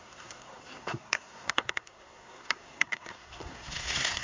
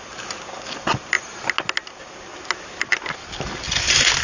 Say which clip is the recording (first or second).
second